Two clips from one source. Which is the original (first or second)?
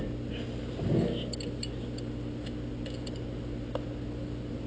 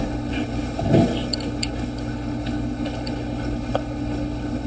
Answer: first